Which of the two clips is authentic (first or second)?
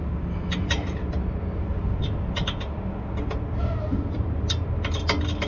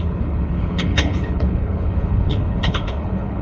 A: first